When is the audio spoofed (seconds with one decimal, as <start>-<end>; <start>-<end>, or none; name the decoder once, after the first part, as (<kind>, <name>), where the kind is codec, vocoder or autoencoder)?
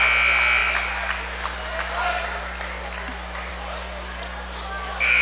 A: none